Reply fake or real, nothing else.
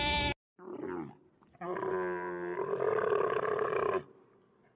real